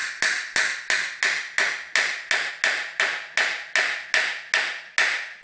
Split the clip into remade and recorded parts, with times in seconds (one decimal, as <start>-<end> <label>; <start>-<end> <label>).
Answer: 0.0-5.4 recorded